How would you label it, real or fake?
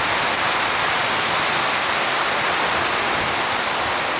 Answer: real